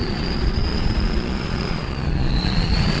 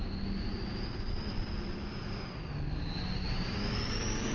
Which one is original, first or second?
second